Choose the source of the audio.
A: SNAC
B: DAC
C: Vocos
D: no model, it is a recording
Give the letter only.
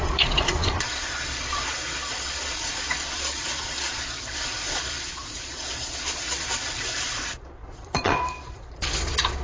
C